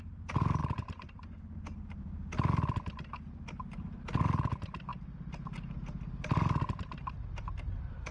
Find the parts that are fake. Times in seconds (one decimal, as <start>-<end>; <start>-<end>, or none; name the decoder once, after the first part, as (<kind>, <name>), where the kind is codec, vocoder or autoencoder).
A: none

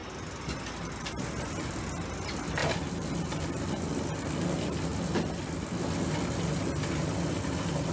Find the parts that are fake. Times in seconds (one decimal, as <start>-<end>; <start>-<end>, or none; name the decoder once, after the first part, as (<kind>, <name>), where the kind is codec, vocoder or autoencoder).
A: none

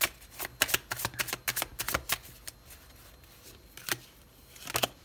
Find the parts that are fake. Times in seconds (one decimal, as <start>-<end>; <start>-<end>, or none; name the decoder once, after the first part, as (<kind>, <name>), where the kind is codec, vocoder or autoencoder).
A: none

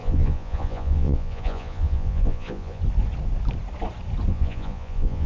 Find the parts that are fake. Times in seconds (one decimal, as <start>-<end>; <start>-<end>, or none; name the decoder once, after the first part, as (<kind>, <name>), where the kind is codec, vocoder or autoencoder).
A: 0.0-2.8 (vocoder, Vocos); 4.3-5.3

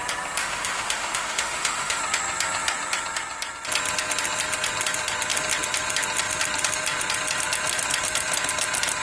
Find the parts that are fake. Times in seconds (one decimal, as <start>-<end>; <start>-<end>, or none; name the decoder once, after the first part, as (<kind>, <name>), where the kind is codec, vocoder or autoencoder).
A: 0.4-2.0 (autoencoder, DAC-VAE)

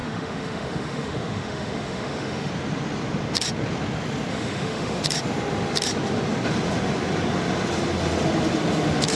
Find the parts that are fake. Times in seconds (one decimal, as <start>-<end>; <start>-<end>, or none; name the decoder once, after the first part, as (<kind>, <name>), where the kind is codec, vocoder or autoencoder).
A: 0.0-2.5 (autoencoder, DAC-VAE); 4.3-5.0

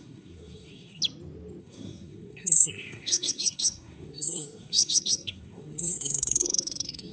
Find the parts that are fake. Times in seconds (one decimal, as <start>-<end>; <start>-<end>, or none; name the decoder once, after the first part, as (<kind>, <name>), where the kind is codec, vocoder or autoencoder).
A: 0.0-1.0 (codec, SNAC); 1.6-7.1